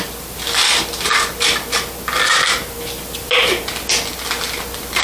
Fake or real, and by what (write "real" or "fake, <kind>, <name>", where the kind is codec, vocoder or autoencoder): real